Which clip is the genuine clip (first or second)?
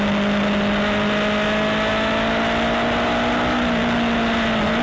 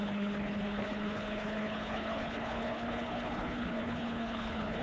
first